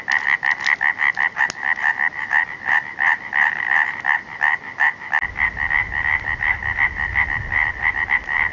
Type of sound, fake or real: real